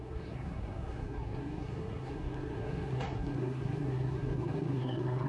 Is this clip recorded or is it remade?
remade